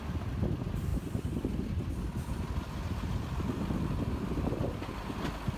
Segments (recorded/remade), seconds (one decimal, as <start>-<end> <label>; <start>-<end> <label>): 0.0-5.6 recorded